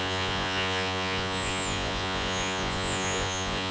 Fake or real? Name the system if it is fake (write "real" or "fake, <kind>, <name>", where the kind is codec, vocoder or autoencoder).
fake, vocoder, Vocos